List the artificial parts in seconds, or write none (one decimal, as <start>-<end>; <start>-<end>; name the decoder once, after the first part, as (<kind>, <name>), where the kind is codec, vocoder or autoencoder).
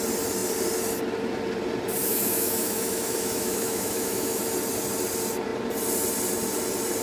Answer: 2.1-4.4 (autoencoder, DAC-VAE)